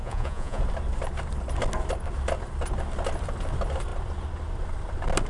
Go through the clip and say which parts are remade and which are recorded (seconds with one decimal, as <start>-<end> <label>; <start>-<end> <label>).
0.0-0.6 remade; 0.6-5.3 recorded